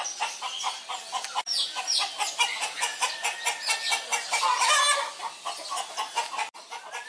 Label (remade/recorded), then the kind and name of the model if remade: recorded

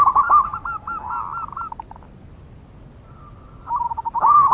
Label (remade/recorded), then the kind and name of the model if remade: recorded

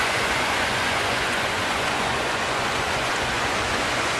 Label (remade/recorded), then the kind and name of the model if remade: remade, vocoder, Vocos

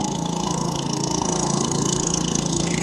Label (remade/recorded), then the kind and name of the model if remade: remade, codec, SNAC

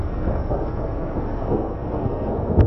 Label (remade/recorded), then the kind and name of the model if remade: remade, codec, SNAC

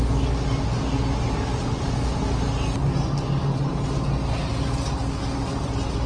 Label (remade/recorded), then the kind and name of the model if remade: recorded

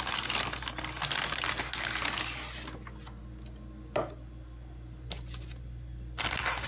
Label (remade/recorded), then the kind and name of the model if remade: recorded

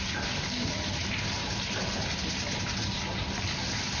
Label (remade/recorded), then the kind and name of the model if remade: recorded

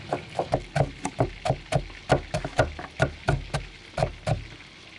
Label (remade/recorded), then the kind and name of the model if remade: recorded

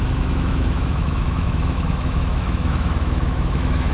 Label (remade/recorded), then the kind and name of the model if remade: remade, autoencoder, DAC-VAE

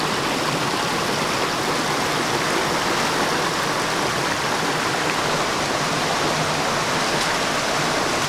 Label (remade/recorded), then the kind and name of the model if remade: recorded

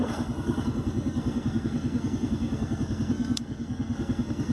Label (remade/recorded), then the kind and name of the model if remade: remade, codec, SNAC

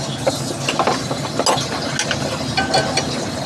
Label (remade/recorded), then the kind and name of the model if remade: recorded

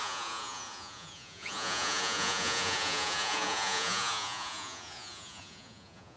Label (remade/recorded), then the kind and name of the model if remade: remade, vocoder, Vocos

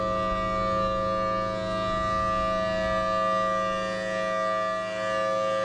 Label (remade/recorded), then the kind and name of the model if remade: recorded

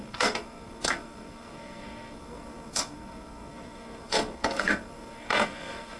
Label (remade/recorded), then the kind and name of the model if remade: remade, codec, SNAC